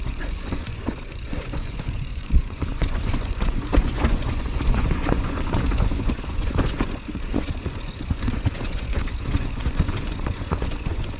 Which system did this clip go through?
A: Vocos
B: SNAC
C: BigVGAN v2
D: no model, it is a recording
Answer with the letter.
A